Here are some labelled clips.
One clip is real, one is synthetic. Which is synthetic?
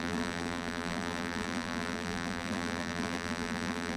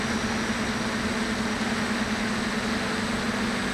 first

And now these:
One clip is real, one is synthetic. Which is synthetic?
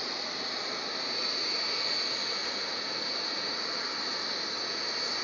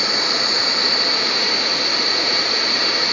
second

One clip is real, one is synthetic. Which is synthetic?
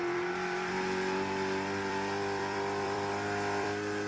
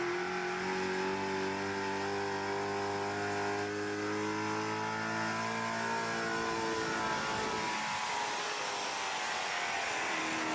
first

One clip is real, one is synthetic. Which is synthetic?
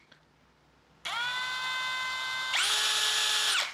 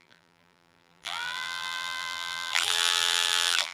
second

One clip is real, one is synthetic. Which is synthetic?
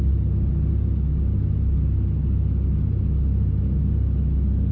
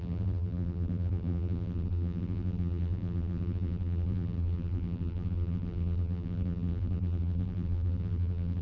second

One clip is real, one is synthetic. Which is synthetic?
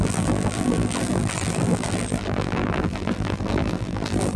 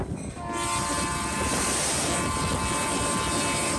first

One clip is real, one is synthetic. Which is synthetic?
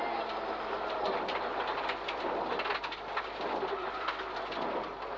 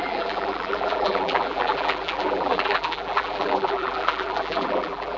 second